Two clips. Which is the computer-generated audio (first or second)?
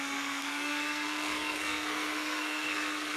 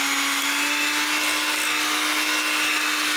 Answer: first